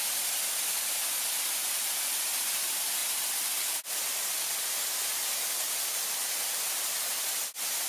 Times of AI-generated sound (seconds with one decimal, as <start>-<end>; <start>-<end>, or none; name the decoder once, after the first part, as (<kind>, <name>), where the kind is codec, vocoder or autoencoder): none